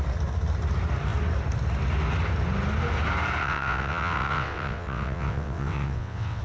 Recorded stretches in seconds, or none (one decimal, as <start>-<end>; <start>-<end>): 0.0-3.4

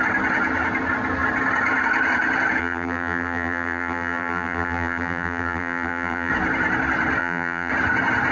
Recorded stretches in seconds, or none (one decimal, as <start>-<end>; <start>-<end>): 0.0-2.6; 6.3-7.2; 7.7-8.3

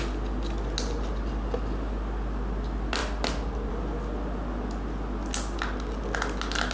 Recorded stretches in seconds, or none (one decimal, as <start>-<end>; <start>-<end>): 0.0-6.7